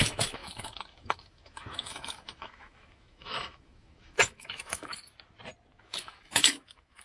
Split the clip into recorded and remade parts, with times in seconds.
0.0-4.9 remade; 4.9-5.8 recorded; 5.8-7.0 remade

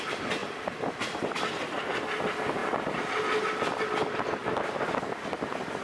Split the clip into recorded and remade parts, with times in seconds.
0.0-5.8 recorded

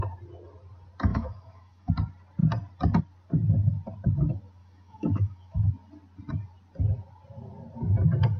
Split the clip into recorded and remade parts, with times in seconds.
0.0-1.1 recorded; 1.1-1.9 remade; 1.9-4.6 recorded; 4.6-5.7 remade; 5.7-8.4 recorded

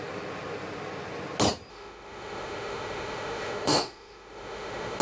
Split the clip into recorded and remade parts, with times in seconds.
0.0-1.7 recorded; 1.7-5.0 remade

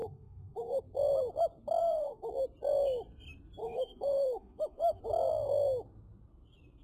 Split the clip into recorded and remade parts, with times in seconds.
0.0-0.8 remade; 0.8-1.8 recorded; 1.8-2.3 remade; 2.3-3.6 recorded; 3.6-5.0 remade; 5.0-6.8 recorded